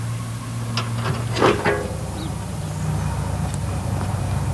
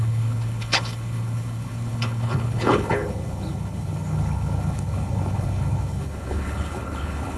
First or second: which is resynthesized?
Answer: second